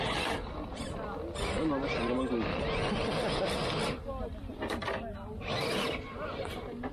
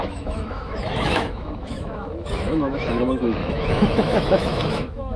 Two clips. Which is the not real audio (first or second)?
second